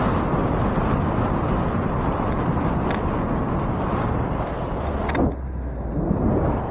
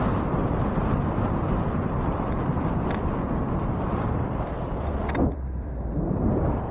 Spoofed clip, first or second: second